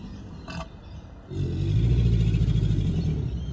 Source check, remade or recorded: recorded